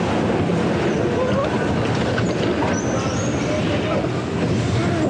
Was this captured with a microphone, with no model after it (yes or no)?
yes